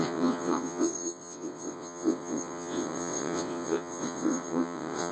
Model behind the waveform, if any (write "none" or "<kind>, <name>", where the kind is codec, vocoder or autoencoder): vocoder, WaveNeXt